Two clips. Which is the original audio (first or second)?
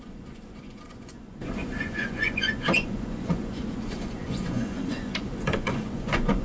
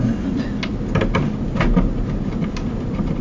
second